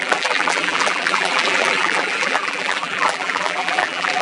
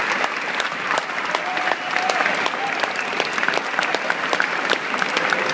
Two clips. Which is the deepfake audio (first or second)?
first